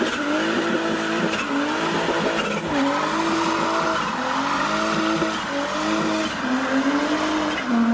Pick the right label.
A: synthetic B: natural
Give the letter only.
B